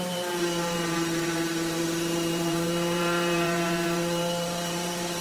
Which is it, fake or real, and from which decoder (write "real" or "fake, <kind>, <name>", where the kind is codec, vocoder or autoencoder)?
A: fake, vocoder, BigVGAN v2